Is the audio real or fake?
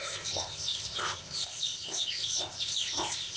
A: fake